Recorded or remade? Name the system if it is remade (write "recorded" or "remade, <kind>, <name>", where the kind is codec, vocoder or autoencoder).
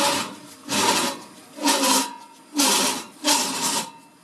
recorded